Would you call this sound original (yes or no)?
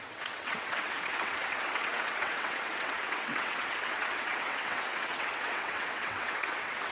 no